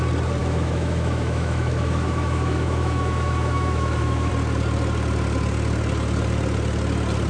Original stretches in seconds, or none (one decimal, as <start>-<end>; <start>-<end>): 0.0-0.4; 4.3-7.3